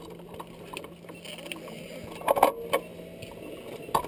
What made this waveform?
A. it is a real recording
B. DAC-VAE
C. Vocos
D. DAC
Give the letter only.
A